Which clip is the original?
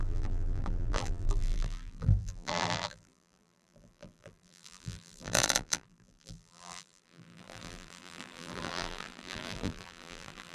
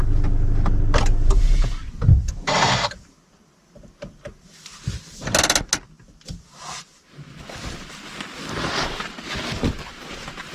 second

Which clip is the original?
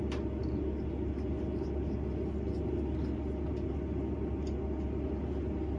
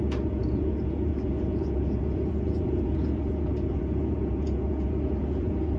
first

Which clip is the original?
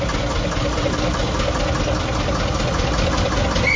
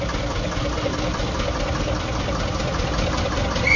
first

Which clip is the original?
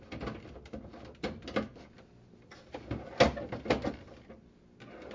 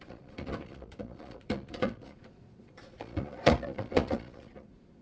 first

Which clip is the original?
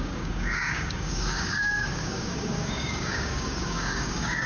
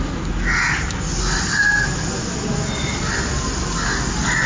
second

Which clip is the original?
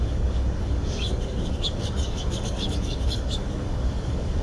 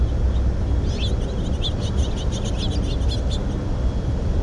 second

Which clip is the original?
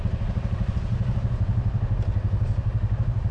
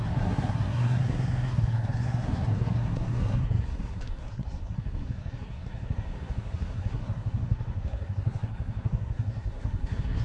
first